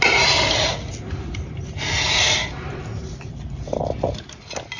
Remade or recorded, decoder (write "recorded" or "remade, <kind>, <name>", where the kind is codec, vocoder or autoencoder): recorded